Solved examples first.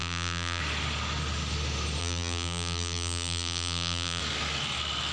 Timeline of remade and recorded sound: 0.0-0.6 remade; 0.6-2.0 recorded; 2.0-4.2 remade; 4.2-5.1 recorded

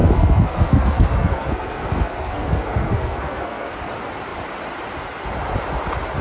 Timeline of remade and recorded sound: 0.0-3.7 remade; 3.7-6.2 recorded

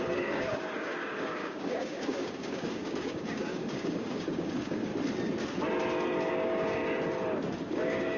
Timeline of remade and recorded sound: 0.0-4.9 remade; 4.9-6.3 recorded; 6.3-6.8 remade; 6.8-7.7 recorded; 7.7-8.2 remade

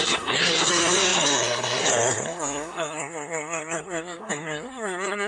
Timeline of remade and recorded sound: 0.0-5.3 remade

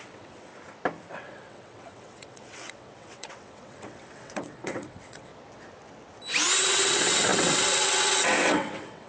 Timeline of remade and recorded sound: 0.0-0.5 remade; 0.5-1.1 recorded; 1.1-5.3 remade; 5.3-6.6 recorded; 6.6-9.1 remade